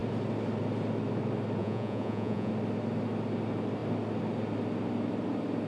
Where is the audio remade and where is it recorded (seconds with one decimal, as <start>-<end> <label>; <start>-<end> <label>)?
0.0-1.6 recorded; 1.6-2.5 remade; 2.5-5.7 recorded